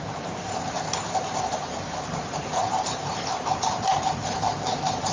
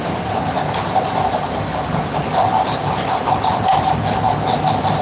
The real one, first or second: second